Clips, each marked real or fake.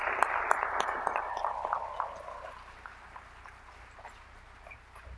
real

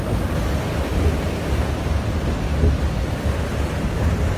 real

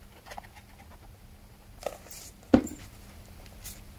real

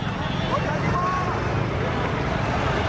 real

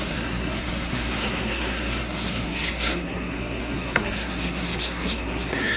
fake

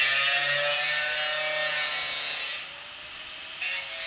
real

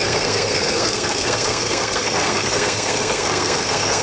fake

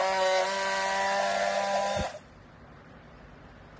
real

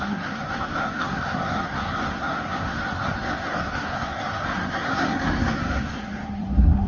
fake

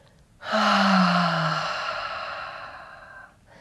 real